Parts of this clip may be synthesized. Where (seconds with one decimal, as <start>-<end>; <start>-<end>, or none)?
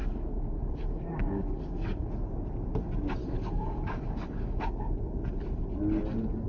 0.0-2.1; 3.2-4.6